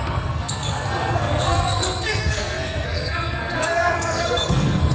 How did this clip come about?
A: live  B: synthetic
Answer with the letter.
B